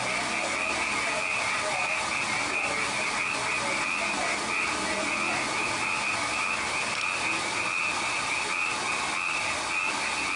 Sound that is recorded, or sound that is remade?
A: recorded